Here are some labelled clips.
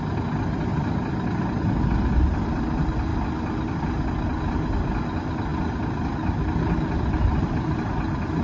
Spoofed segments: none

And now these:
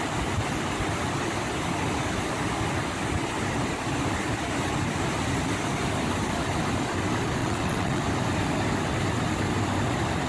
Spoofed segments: 7.4-8.0 (vocoder, WaveNeXt)

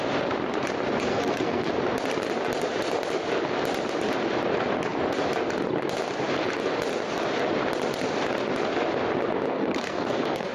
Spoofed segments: 1.1-1.7 (codec, SNAC); 9.5-10.5